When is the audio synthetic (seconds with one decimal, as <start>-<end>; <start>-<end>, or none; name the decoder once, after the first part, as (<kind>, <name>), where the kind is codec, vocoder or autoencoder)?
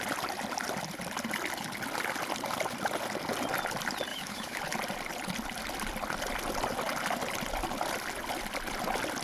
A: 4.1-4.6 (autoencoder, DAC-VAE)